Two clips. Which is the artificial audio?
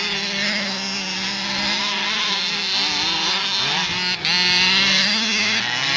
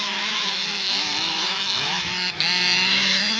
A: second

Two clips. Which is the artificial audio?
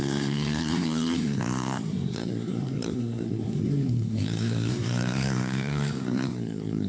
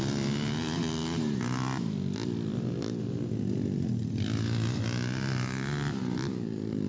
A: first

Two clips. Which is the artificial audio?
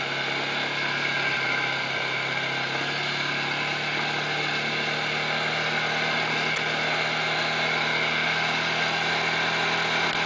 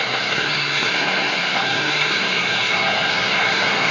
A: second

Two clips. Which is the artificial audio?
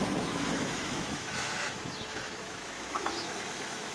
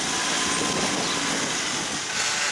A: first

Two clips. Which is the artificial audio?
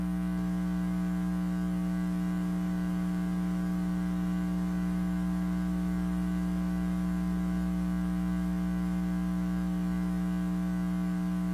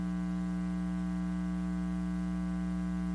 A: first